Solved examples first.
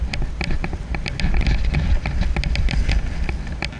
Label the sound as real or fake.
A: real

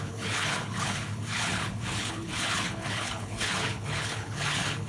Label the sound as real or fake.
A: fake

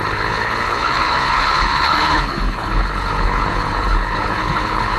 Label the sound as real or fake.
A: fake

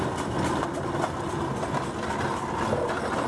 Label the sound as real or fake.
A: real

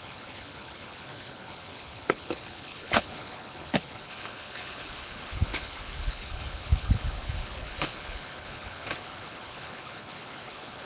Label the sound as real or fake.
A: fake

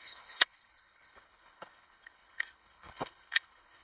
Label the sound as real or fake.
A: fake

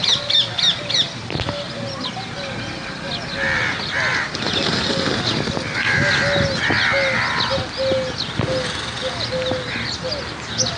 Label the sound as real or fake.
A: real